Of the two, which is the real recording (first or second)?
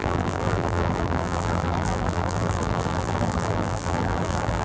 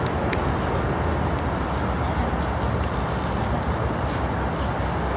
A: second